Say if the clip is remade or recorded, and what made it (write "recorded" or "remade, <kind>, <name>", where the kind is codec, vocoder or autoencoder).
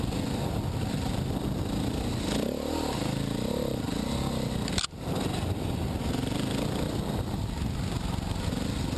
recorded